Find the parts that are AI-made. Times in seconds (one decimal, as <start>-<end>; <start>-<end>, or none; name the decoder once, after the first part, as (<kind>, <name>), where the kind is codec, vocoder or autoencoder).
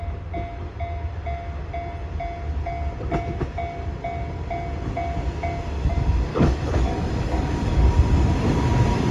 6.3-7.9 (codec, DAC)